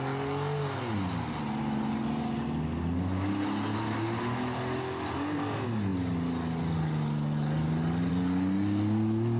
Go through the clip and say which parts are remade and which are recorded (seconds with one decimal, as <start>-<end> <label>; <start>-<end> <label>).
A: 0.0-9.4 recorded